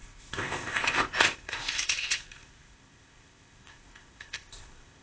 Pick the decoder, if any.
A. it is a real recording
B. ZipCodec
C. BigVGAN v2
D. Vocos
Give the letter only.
B